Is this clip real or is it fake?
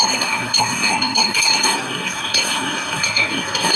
fake